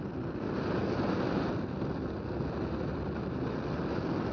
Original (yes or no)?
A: yes